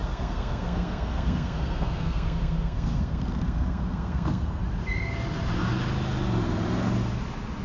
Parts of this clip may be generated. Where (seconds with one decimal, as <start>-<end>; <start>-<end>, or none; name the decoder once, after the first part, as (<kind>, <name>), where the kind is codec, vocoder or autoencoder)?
0.0-4.6 (codec, SNAC)